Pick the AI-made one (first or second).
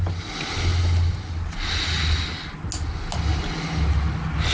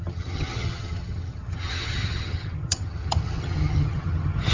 second